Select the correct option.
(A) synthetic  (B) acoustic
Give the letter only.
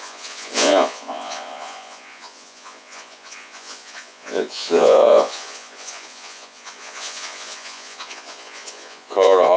A